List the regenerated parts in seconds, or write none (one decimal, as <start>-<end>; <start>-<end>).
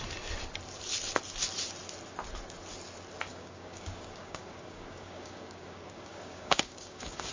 3.3-7.3